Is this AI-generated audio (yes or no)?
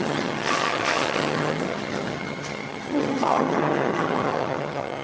yes